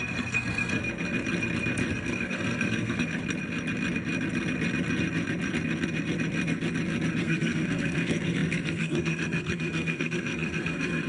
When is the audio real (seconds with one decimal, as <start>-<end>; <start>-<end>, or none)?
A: 0.8-1.9; 3.2-7.2